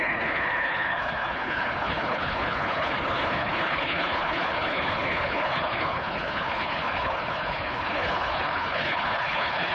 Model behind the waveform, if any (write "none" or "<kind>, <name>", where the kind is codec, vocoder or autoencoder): codec, HILCodec